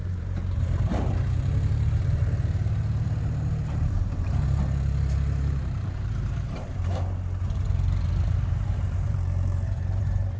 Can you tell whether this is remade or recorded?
remade